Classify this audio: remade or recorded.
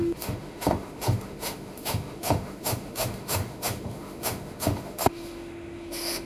remade